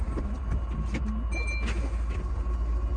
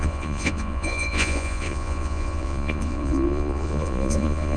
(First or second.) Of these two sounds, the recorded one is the first